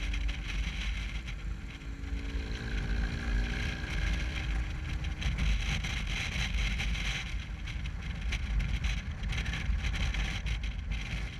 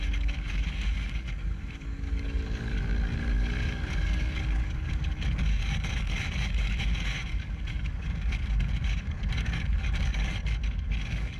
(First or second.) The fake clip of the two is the second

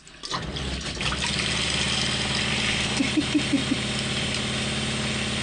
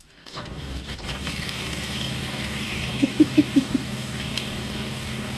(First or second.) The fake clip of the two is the second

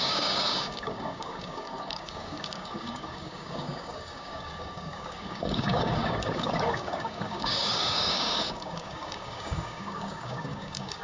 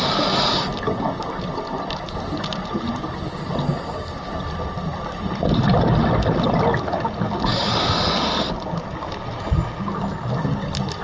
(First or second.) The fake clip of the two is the first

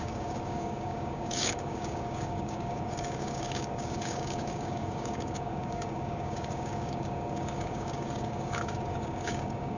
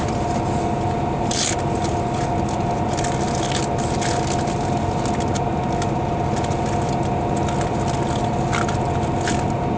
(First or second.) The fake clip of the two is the first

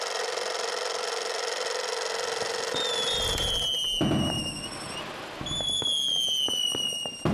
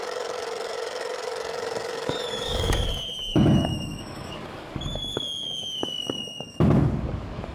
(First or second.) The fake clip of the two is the second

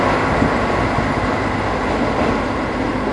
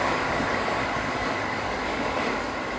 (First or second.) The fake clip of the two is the second